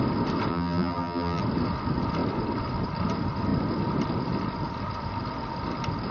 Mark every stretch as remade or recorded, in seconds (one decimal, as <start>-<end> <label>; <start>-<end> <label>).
0.0-0.5 recorded; 0.5-1.4 remade; 1.4-6.1 recorded